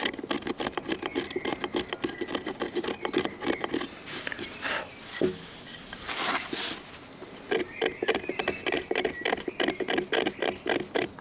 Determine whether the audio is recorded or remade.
recorded